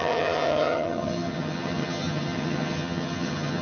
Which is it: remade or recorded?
remade